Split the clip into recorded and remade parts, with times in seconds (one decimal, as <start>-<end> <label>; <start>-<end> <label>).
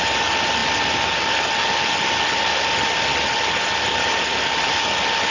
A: 0.0-5.3 recorded